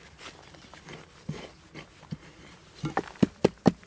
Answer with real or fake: real